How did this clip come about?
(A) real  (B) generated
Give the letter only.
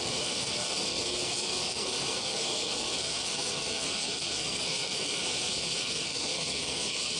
B